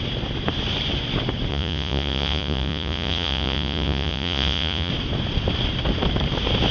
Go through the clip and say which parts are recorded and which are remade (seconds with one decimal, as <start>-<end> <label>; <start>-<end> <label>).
0.0-1.5 recorded; 1.5-4.9 remade; 4.9-6.7 recorded